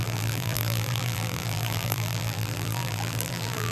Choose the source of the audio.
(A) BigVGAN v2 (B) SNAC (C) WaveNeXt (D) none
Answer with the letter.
A